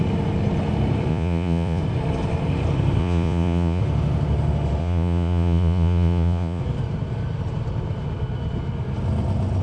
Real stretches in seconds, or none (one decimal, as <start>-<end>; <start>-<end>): 0.0-1.1; 1.8-3.0; 3.8-4.8; 6.6-9.6